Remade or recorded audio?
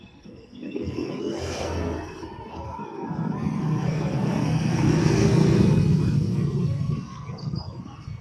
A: remade